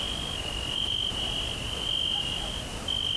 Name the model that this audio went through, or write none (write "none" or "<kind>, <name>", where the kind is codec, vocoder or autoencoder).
none